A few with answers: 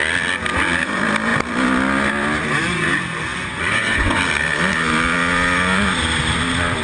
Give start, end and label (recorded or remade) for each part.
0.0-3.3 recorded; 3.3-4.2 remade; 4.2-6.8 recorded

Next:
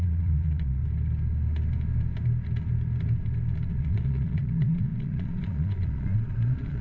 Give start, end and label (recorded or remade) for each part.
0.0-0.8 remade; 0.8-3.7 recorded; 3.7-6.8 remade

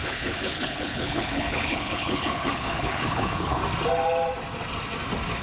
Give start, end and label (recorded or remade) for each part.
0.0-3.6 remade; 3.6-5.4 recorded

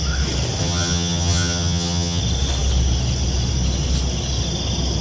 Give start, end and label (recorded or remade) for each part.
0.0-0.6 recorded; 0.6-2.2 remade; 2.2-5.0 recorded

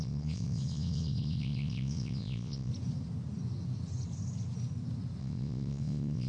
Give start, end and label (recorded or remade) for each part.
0.0-2.7 remade; 2.7-5.2 recorded; 5.2-6.3 remade

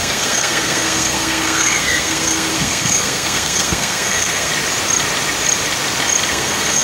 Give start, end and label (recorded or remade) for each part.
0.0-4.5 remade; 4.5-6.3 recorded; 6.3-6.8 remade

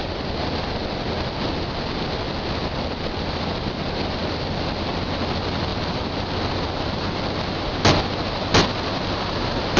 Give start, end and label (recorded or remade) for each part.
0.0-9.8 recorded